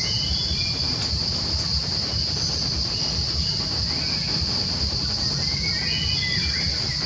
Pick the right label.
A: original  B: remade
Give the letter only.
A